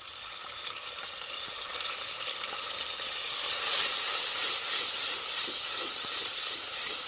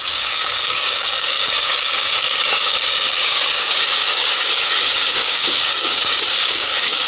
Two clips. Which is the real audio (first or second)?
first